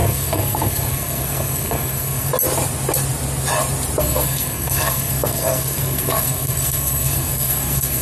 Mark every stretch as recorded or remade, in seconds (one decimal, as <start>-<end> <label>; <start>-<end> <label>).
0.0-2.3 remade; 2.3-4.0 recorded; 4.0-8.0 remade